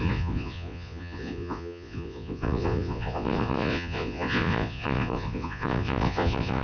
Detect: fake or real fake